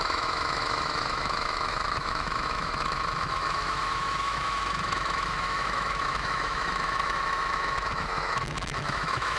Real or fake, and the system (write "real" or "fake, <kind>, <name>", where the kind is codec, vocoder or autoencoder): fake, autoencoder, DAC-VAE